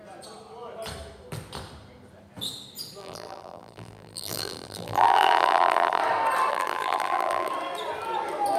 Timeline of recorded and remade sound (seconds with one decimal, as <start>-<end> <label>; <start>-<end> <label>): 0.0-3.0 recorded; 3.0-6.0 remade; 6.0-6.5 recorded; 6.5-7.5 remade; 7.5-8.6 recorded